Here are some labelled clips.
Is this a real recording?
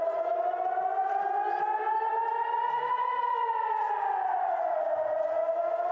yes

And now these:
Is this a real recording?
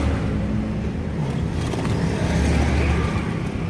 yes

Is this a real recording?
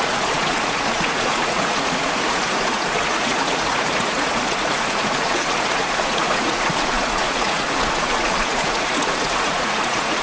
no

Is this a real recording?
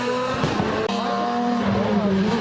yes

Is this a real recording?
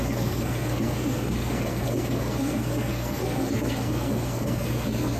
no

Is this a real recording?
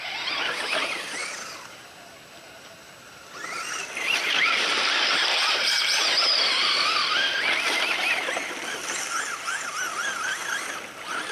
yes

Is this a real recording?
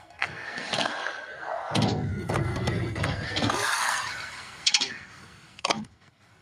no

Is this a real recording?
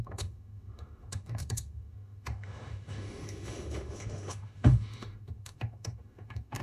no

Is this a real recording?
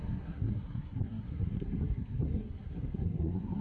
no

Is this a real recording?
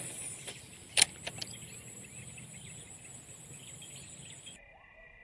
yes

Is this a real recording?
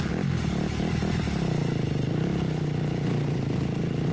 yes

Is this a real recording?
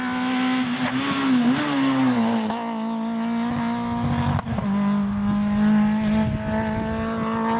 yes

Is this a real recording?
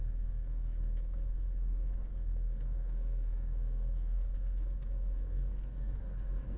no